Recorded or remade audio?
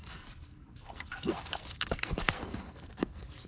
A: remade